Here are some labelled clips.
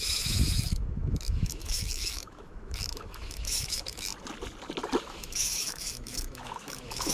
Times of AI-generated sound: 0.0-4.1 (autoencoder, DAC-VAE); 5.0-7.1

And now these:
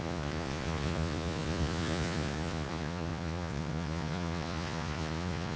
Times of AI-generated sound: 0.0-5.6 (vocoder, Vocos)

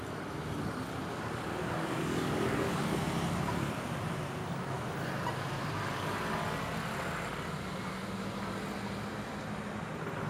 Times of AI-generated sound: 1.1-2.8 (codec, DAC)

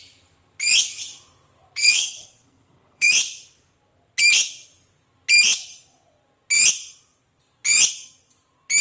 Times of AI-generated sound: 1.8-3.1 (codec, SNAC)

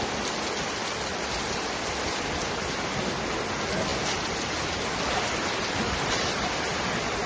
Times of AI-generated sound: 0.8-2.2 (vocoder, BigVGAN v2); 3.9-6.6

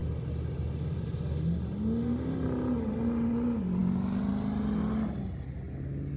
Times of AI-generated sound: none

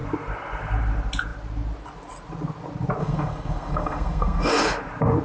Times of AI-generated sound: 3.0-4.5 (codec, SNAC)